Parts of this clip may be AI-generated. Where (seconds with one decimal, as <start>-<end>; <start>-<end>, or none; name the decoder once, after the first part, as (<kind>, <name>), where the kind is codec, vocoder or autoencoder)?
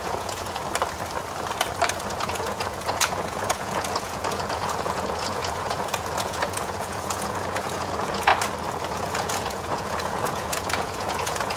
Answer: 0.0-0.6 (vocoder, Vocos); 2.1-8.3; 8.9-11.6